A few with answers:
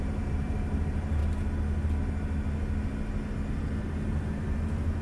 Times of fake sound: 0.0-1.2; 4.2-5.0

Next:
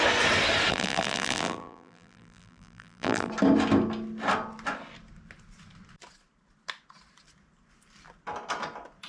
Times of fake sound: 0.7-3.3